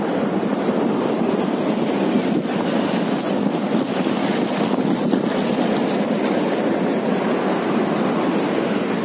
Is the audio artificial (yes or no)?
no